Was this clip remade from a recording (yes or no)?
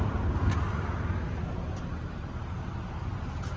no